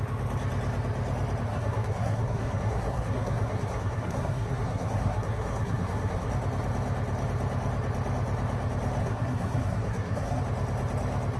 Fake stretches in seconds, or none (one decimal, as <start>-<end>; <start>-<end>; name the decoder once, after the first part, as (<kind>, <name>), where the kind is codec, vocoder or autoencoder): 1.5-6.3 (codec, SNAC); 9.0-10.4